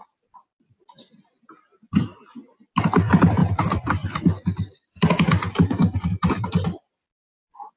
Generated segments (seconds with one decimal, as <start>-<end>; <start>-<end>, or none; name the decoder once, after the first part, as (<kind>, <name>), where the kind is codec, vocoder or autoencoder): 3.4-6.8 (vocoder, BigVGAN v2)